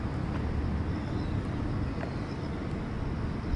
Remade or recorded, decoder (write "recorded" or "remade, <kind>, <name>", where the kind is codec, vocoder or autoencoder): recorded